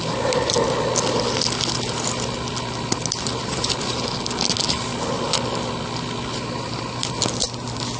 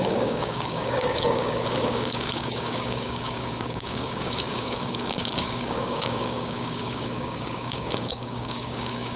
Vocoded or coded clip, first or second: second